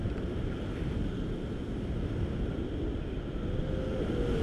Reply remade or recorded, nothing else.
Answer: recorded